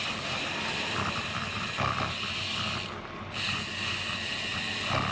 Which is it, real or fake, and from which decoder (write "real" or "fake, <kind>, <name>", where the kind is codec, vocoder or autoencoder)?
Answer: real